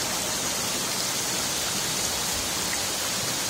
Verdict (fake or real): real